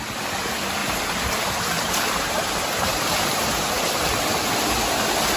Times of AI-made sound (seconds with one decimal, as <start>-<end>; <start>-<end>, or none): 0.8-4.0